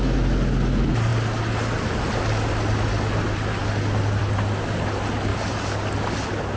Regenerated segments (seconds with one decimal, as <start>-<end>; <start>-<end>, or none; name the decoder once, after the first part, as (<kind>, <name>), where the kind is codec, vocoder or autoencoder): none